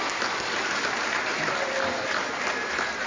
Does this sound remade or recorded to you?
recorded